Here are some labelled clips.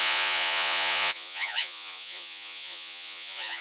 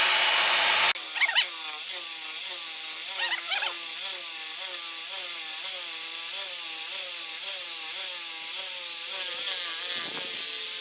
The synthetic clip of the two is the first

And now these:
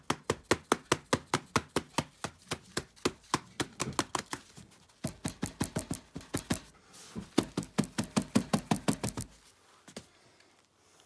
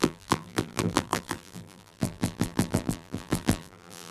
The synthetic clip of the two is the second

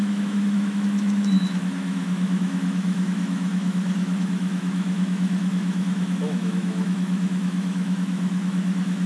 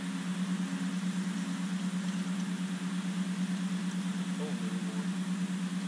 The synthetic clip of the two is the first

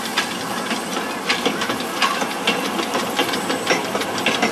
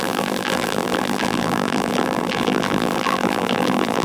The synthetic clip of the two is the second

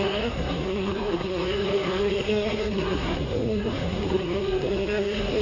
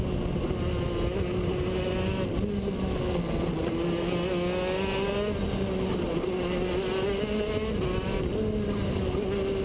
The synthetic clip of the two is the first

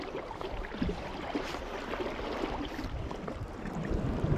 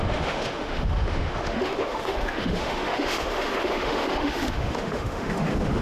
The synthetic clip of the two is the second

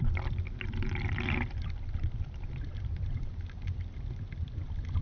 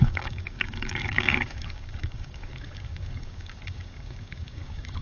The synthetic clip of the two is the second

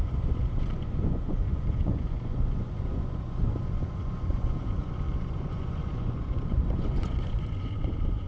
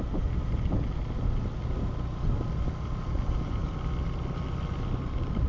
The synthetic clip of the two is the first